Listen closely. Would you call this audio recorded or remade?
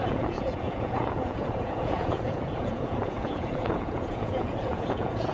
remade